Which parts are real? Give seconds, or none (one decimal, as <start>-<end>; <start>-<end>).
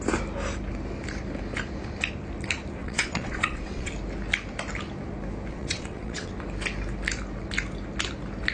0.0-2.8; 3.9-5.5; 6.3-8.5